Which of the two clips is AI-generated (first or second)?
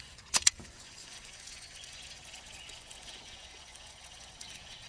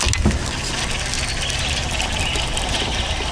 first